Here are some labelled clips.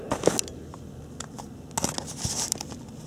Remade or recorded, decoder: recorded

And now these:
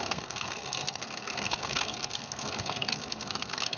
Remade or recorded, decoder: remade, codec, SNAC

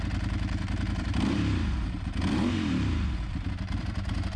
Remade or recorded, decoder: remade, vocoder, BigVGAN v2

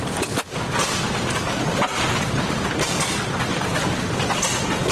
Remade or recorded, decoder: recorded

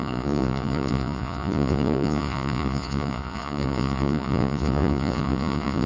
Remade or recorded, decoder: remade, vocoder, Vocos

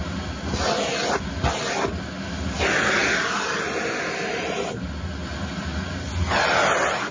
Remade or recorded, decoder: recorded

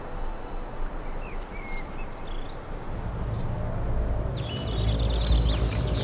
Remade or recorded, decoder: recorded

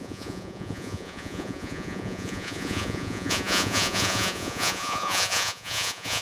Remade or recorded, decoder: remade, vocoder, Vocos